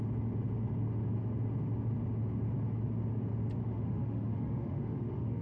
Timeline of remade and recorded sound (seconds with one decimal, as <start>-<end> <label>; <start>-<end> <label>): 0.0-3.6 recorded; 3.6-5.4 remade